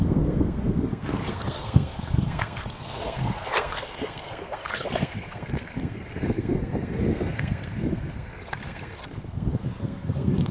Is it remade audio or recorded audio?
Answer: remade